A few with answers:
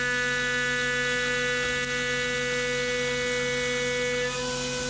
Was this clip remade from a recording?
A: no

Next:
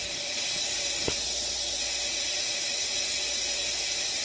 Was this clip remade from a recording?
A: no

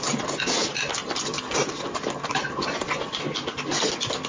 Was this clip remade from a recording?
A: no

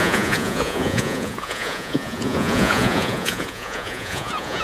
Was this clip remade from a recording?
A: yes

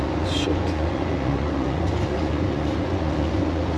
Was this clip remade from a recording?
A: yes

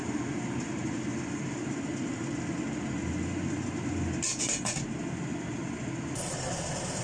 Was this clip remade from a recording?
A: no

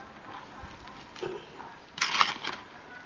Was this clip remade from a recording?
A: no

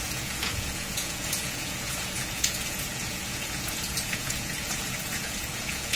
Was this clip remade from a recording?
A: yes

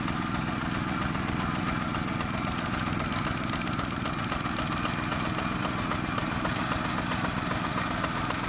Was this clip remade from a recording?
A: no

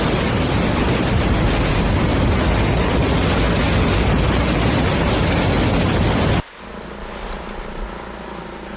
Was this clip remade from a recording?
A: no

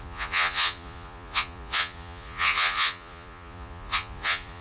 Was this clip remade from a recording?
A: yes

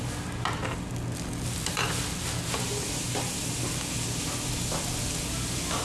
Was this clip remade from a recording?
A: no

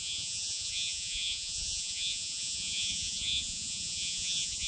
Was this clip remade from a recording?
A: yes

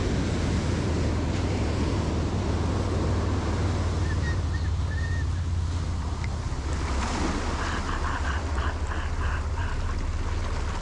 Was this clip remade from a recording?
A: no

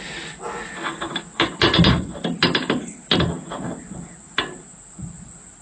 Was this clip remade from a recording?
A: no